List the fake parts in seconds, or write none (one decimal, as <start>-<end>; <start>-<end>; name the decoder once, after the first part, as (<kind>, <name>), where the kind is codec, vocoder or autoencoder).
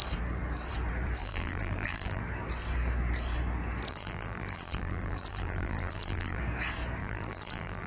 1.2-2.2 (vocoder, BigVGAN v2); 3.9-6.4; 7.0-7.9